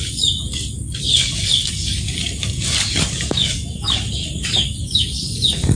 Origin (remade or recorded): remade